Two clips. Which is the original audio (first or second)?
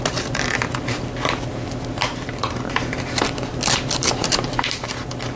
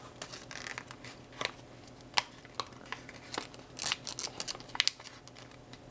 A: second